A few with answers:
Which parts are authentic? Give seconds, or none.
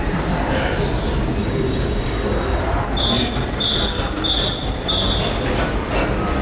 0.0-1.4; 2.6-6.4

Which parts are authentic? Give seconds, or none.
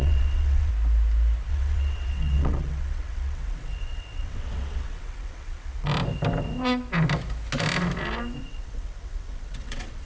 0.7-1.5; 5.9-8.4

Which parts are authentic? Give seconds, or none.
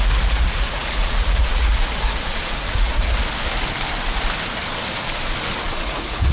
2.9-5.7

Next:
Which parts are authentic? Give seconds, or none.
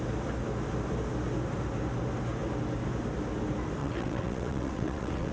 0.0-3.8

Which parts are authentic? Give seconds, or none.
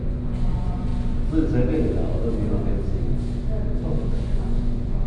0.9-3.6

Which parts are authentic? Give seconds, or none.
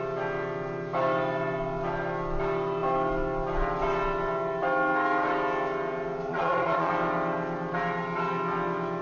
0.0-6.3; 6.9-9.0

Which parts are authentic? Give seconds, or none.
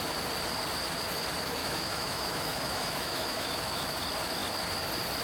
0.0-1.6; 4.0-5.2